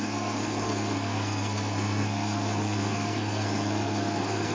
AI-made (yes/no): yes